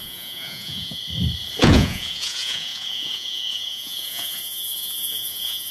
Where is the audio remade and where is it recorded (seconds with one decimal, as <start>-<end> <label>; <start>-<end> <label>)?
0.0-1.0 remade; 1.0-1.6 recorded; 1.6-5.7 remade